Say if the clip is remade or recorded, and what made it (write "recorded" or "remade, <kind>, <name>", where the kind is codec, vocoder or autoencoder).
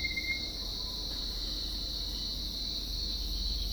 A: recorded